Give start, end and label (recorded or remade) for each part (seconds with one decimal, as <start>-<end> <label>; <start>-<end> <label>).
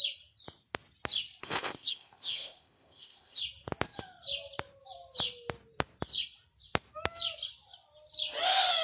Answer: 0.0-1.4 recorded; 1.4-3.4 remade; 3.4-8.8 recorded